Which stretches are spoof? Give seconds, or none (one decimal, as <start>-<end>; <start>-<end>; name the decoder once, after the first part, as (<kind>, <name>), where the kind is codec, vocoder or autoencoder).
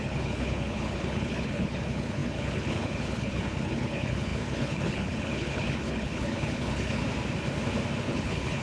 0.0-7.0 (codec, HILCodec); 8.0-8.6